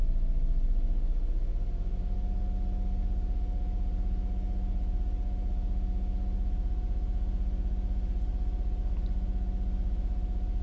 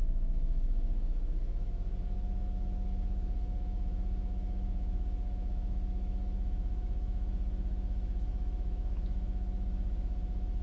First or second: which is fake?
second